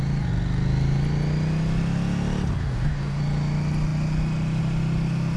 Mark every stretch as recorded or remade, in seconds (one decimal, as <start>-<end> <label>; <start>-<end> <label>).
0.0-2.6 recorded; 2.6-3.2 remade; 3.2-5.4 recorded